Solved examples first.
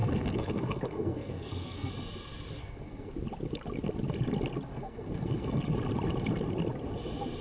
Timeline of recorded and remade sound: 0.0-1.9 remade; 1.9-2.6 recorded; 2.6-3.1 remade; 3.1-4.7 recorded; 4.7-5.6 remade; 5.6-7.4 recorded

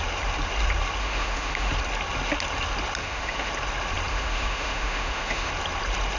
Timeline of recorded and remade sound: 0.0-1.0 recorded; 1.0-1.7 remade; 1.7-3.0 recorded; 3.0-3.5 remade; 3.5-4.1 recorded; 4.1-5.5 remade; 5.5-6.2 recorded

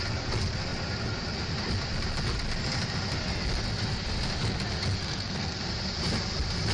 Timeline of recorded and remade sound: 0.0-5.0 recorded; 5.0-5.6 remade; 5.6-6.7 recorded

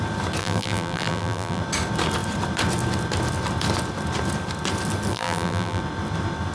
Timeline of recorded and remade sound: 0.0-0.4 recorded; 0.4-1.6 remade; 1.6-5.1 recorded; 5.1-5.8 remade; 5.8-6.5 recorded

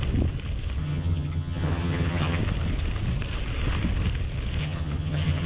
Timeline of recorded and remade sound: 0.0-0.8 recorded; 0.8-2.4 remade; 2.4-4.6 recorded; 4.6-5.5 remade

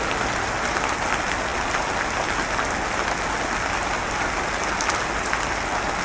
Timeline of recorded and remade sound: 0.0-6.0 recorded

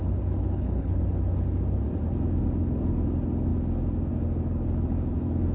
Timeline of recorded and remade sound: 0.0-0.4 recorded; 0.4-1.0 remade; 1.0-5.5 recorded

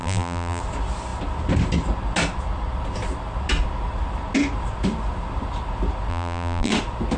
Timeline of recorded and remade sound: 0.0-0.6 remade; 0.6-6.1 recorded; 6.1-6.7 remade; 6.7-7.2 recorded